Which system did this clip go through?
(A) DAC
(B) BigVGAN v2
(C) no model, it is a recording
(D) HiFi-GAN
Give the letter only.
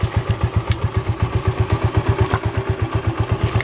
C